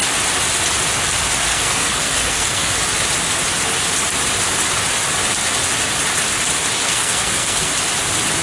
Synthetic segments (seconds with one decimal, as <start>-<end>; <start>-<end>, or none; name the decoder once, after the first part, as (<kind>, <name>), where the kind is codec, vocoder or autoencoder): 1.5-2.7 (codec, SNAC); 6.8-7.7